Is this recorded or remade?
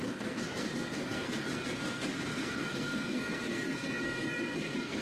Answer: remade